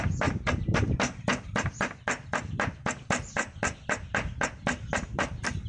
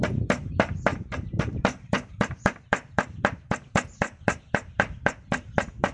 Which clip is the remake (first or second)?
second